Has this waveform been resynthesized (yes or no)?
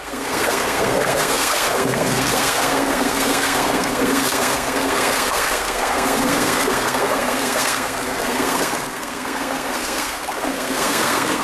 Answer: yes